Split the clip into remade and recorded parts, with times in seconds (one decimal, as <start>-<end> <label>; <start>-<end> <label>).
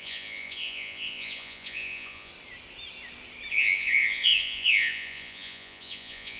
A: 0.0-2.3 remade; 2.3-3.5 recorded; 3.5-6.4 remade